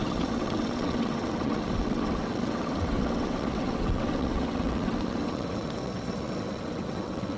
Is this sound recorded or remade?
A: remade